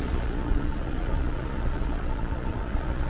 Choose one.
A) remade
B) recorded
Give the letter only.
A